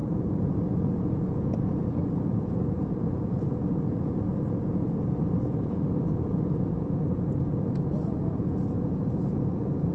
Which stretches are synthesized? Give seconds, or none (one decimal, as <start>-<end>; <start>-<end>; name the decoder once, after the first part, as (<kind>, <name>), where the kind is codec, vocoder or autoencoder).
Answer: 0.0-9.9 (vocoder, Vocos)